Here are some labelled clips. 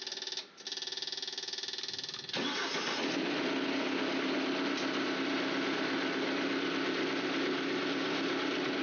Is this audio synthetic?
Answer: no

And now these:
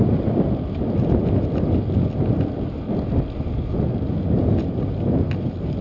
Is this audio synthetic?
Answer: no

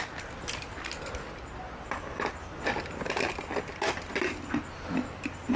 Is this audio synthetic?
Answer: no